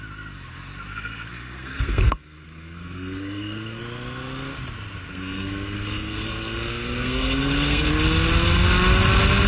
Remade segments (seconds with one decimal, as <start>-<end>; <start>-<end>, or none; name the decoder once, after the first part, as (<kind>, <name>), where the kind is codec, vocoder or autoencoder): 0.9-3.8 (codec, SNAC); 5.1-7.9